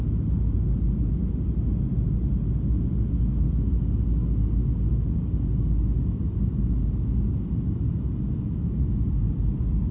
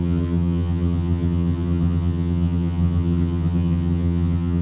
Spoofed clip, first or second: second